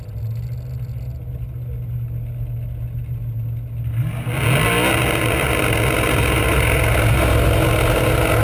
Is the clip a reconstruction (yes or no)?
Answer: no